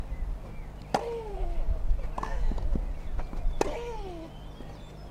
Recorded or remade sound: recorded